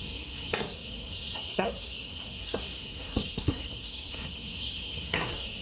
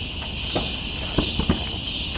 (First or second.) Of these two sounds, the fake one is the first